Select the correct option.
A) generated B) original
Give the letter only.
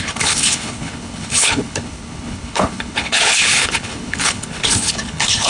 A